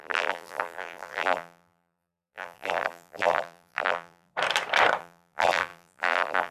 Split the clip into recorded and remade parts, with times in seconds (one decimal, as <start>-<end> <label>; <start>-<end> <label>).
0.0-4.3 remade; 4.3-5.0 recorded; 5.0-6.5 remade